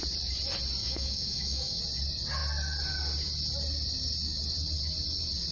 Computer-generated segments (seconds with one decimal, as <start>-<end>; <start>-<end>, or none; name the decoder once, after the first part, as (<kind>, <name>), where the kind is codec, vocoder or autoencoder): 0.8-1.8 (autoencoder, DAC-VAE)